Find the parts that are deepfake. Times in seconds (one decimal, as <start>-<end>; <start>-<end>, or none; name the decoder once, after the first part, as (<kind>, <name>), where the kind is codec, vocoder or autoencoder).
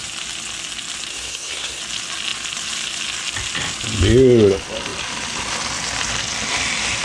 1.1-1.8 (codec, SNAC)